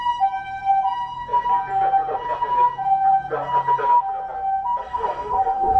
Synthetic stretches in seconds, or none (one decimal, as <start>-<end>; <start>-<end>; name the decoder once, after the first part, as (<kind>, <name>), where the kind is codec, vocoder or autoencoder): 4.8-5.8 (codec, DAC)